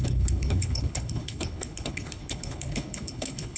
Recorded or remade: remade